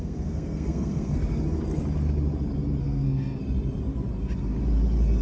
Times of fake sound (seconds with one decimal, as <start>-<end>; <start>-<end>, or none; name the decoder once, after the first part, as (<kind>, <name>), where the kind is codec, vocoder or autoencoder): 0.0-1.2 (codec, SNAC); 2.8-3.4